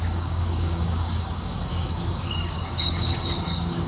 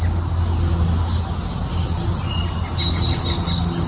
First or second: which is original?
second